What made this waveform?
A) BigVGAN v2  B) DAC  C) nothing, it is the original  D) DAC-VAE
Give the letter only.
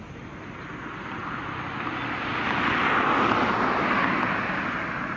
C